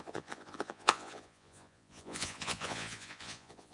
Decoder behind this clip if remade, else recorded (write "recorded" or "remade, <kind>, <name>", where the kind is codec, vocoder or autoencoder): remade, vocoder, Vocos